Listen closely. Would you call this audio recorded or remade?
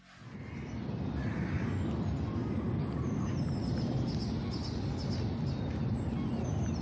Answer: recorded